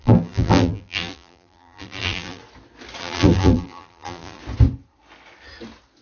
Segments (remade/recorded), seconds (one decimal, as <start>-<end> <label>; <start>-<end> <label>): 0.0-2.4 remade; 2.4-3.0 recorded; 3.0-4.4 remade; 4.4-6.0 recorded